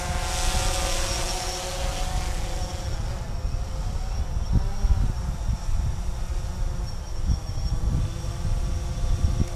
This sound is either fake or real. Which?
real